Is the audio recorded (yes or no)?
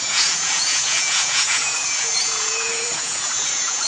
no